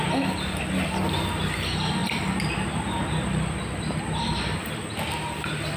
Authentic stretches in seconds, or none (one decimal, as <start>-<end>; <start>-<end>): 0.0-5.8